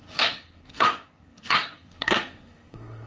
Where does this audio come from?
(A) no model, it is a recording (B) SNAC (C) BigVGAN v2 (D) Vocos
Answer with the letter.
B